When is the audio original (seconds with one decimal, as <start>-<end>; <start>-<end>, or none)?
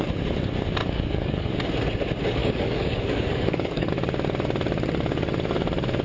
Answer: 0.0-0.8; 1.6-2.4; 3.9-6.0